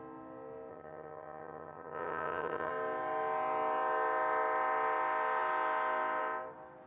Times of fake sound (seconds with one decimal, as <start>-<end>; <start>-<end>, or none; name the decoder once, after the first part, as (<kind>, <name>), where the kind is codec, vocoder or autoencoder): 0.7-2.7 (vocoder, HiFi-GAN)